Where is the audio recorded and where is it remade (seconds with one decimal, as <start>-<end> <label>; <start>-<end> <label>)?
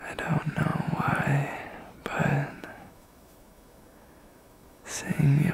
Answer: 0.0-2.2 recorded; 2.2-5.5 remade